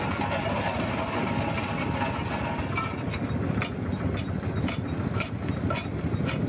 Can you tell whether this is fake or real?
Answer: real